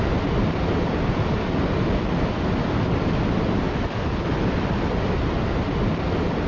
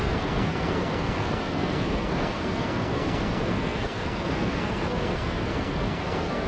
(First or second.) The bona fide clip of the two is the first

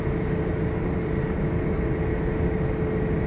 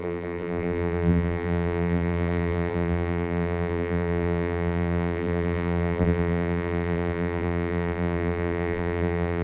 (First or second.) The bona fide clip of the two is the first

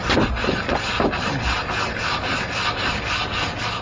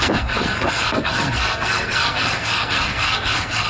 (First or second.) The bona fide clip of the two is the first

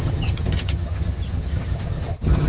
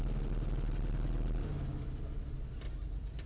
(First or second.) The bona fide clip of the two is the second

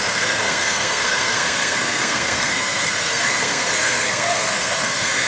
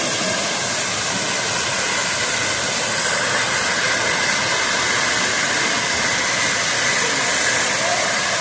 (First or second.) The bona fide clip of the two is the second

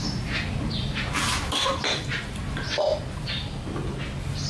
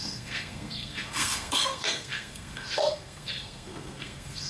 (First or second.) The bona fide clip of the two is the first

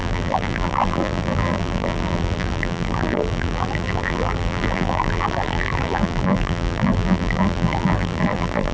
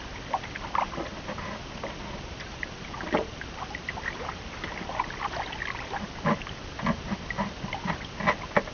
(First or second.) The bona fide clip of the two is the second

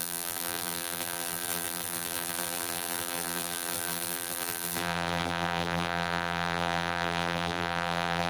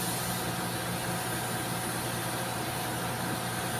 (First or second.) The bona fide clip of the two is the second